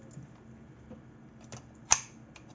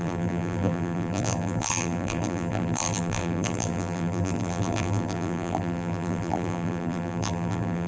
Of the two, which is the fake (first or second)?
second